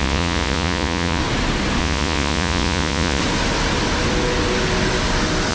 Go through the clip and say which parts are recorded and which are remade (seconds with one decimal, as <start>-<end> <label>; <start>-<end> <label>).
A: 0.0-1.2 remade; 1.2-1.8 recorded; 1.8-3.2 remade; 3.2-5.5 recorded